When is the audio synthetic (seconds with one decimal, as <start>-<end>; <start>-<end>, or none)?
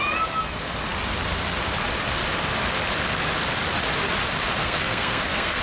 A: 4.6-5.6